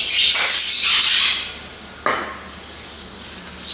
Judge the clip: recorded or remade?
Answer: recorded